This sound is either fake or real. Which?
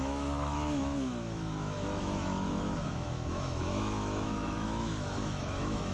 fake